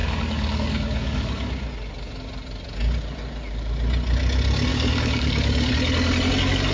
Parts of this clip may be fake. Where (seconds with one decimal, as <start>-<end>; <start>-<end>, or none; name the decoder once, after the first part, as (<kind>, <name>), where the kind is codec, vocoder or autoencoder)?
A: 0.0-1.5 (codec, DAC); 4.7-5.7